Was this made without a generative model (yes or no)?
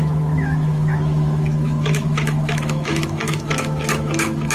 no